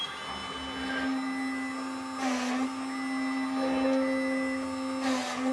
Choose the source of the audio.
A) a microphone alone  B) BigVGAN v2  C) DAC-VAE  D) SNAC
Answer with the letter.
A